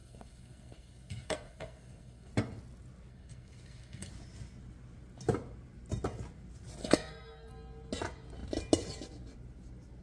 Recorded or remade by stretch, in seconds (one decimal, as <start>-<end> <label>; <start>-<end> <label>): 0.0-2.3 remade; 2.3-3.1 recorded; 3.1-4.1 remade; 4.1-6.8 recorded; 6.8-7.5 remade; 7.5-10.0 recorded